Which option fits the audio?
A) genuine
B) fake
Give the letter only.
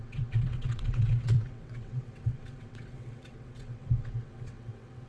B